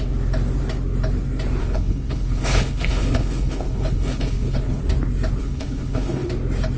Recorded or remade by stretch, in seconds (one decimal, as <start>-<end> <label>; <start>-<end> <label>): 0.0-1.6 recorded; 1.6-4.8 remade; 4.8-5.4 recorded; 5.4-6.3 remade; 6.3-6.8 recorded